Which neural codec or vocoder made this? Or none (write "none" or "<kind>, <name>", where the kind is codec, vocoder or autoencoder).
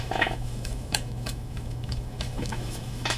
autoencoder, DAC-VAE